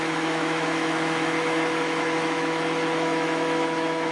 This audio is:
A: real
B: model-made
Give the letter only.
B